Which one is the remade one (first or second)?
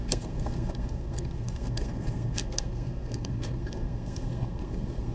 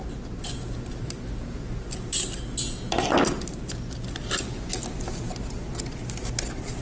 first